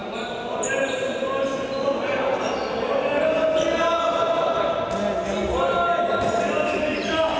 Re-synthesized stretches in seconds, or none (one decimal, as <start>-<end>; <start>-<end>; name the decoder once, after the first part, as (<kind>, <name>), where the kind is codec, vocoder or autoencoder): none